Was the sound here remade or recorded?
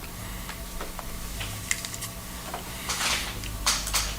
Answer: recorded